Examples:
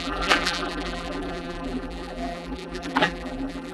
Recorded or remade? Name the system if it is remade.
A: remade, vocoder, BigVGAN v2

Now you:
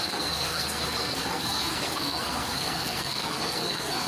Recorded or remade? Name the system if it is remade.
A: remade, codec, SNAC